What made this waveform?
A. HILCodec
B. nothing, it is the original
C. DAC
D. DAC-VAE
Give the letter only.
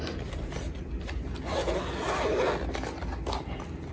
B